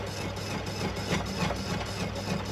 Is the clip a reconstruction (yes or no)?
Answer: no